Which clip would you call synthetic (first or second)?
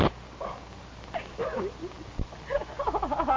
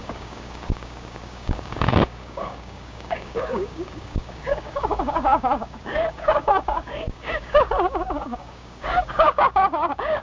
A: second